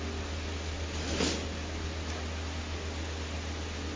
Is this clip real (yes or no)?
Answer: yes